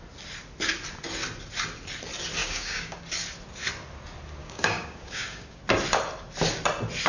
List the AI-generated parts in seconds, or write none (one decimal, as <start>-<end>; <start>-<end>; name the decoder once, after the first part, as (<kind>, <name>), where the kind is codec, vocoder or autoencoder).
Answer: 2.4-3.0 (codec, DAC); 4.4-5.6